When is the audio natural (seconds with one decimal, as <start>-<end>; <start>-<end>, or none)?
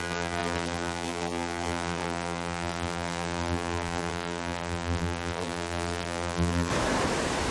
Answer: 6.7-7.5